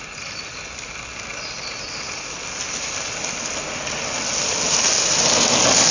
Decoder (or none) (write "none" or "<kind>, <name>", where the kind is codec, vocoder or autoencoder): none